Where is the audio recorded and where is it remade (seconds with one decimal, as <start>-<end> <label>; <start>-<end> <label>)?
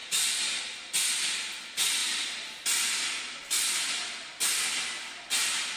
0.0-5.8 recorded